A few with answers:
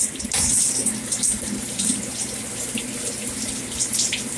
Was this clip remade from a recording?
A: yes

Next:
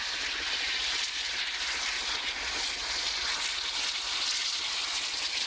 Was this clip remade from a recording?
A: no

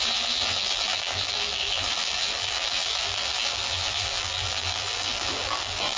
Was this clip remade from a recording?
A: yes